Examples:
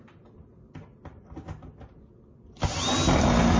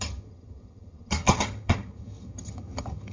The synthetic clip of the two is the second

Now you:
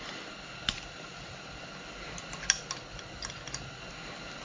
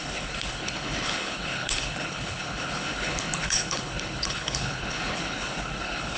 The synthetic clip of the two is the second